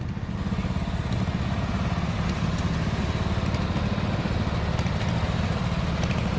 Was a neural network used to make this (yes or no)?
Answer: no